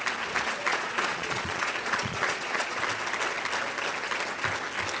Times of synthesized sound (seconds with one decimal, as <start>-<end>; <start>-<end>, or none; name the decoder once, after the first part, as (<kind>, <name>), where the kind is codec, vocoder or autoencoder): 0.7-2.8 (vocoder, Vocos)